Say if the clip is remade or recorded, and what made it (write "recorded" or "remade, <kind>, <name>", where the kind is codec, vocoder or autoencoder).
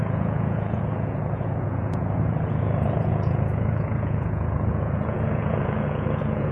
remade, vocoder, Vocos